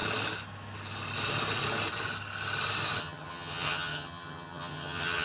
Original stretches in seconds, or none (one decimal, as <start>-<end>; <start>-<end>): 0.0-3.0

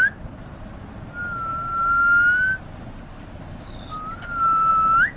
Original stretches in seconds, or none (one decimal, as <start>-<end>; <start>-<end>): 0.0-5.2